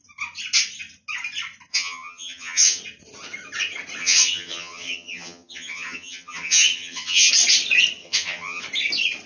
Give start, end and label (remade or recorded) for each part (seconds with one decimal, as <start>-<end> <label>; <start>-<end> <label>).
0.0-1.7 recorded; 1.7-2.8 remade; 2.8-4.0 recorded; 4.0-7.3 remade; 7.3-8.0 recorded; 8.0-8.6 remade; 8.6-9.3 recorded